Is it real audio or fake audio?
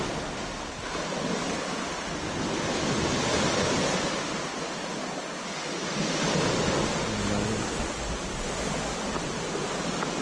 real